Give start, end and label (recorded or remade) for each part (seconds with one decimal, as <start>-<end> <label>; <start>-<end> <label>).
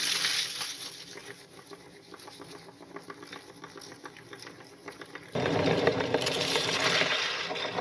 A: 0.0-1.2 recorded; 1.2-3.2 remade; 3.2-3.9 recorded; 3.9-6.7 remade; 6.7-7.8 recorded